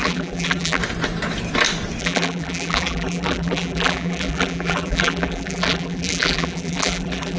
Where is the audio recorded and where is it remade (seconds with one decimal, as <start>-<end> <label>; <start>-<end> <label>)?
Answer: 0.0-0.8 remade; 0.8-2.0 recorded; 2.0-7.4 remade

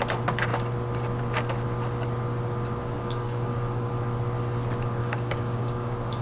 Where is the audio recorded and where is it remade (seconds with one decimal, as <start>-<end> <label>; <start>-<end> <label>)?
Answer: 0.0-2.8 recorded; 2.8-3.9 remade; 3.9-5.0 recorded; 5.0-6.2 remade